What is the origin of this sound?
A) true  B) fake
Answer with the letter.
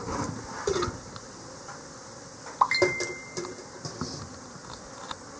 A